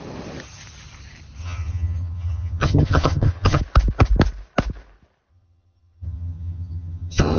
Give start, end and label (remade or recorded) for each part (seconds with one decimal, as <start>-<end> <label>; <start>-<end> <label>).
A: 0.0-1.4 recorded; 1.4-3.6 remade; 3.6-5.3 recorded; 5.3-7.4 remade